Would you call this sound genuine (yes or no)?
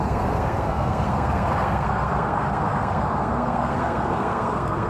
no